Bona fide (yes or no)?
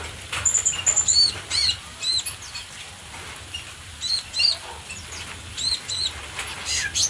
yes